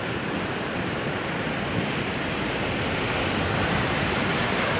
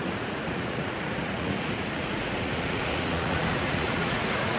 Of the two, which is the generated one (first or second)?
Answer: second